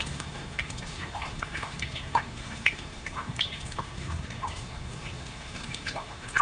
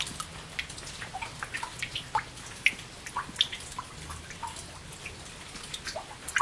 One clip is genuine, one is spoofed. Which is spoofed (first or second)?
first